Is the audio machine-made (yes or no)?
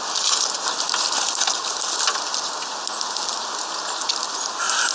no